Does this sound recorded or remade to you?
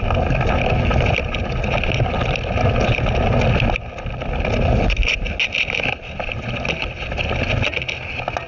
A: recorded